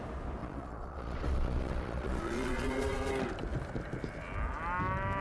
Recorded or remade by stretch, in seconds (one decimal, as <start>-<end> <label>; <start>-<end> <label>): 0.0-0.4 recorded; 0.4-3.1 remade; 3.1-5.2 recorded